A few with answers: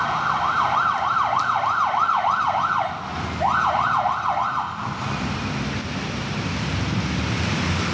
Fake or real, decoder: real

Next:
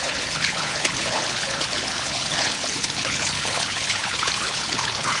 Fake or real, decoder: fake, codec, HILCodec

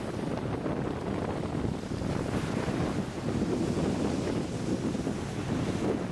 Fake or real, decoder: real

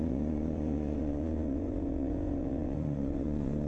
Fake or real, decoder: fake, vocoder, Vocos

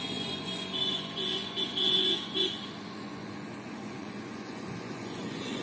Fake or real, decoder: fake, vocoder, Vocos